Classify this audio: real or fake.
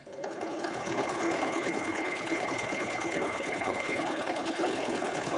fake